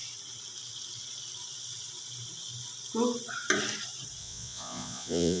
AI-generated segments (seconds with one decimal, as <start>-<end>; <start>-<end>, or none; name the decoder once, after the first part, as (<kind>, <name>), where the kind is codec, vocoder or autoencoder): 4.2-5.4 (vocoder, Vocos)